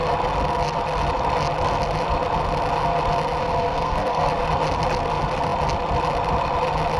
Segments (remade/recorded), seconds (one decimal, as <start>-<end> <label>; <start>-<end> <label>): 0.0-3.4 recorded; 3.4-4.3 remade; 4.3-7.0 recorded